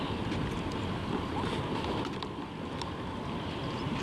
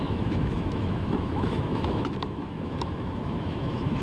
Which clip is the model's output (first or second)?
second